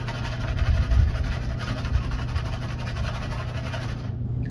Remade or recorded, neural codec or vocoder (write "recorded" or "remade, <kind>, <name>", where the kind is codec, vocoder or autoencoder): recorded